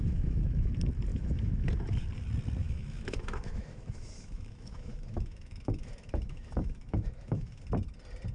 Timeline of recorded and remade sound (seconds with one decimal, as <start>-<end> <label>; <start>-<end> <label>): 0.0-0.7 remade; 0.7-1.1 recorded; 1.1-1.7 remade; 1.7-2.6 recorded; 2.6-7.6 remade; 7.6-8.3 recorded